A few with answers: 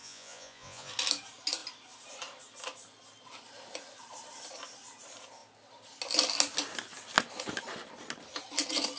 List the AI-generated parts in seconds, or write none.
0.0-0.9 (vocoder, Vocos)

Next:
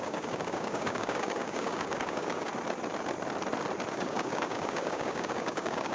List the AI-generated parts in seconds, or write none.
0.0-2.5 (codec, DAC); 3.9-5.9

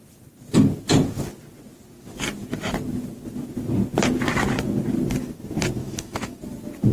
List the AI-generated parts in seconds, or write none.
5.8-6.4 (autoencoder, DAC-VAE)

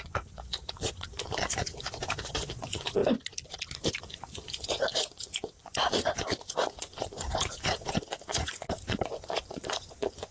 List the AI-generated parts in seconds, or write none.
0.0-3.0 (vocoder, Vocos); 4.0-10.3

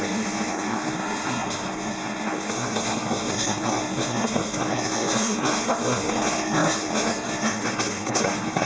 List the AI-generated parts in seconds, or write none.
0.0-8.7 (codec, SNAC)

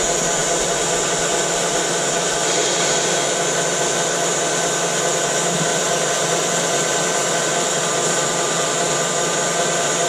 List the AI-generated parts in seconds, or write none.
5.7-9.1 (vocoder, BigVGAN v2)